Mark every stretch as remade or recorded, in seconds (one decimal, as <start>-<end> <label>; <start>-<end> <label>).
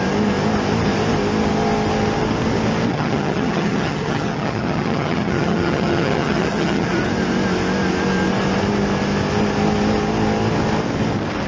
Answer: 0.0-2.9 recorded; 2.9-6.9 remade; 6.9-11.5 recorded